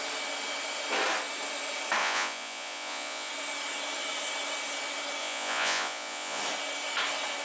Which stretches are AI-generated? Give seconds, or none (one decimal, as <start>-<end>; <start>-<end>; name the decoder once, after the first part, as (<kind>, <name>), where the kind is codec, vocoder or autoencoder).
2.0-3.3 (vocoder, Vocos); 5.2-6.4